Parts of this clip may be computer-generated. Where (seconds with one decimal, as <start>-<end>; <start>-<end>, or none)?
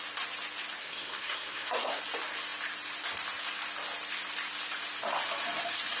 0.8-2.0